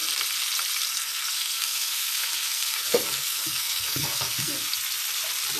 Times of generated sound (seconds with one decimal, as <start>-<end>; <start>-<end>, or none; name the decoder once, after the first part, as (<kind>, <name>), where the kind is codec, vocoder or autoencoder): 0.9-4.7 (codec, SNAC)